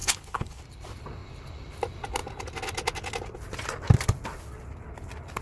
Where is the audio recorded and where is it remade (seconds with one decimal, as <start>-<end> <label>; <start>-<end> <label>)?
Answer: 0.0-0.6 remade; 0.6-5.4 recorded